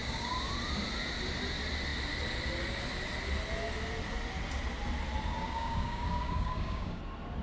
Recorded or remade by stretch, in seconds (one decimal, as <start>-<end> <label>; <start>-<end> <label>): 0.0-0.5 remade; 0.5-5.3 recorded; 5.3-7.0 remade; 7.0-7.4 recorded